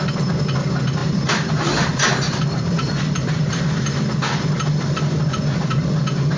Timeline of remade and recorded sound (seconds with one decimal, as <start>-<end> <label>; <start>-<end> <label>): 0.0-1.0 recorded; 1.0-3.6 remade; 3.6-6.4 recorded